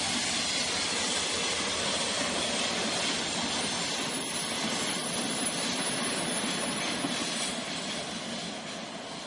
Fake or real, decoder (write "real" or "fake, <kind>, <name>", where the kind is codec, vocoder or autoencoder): real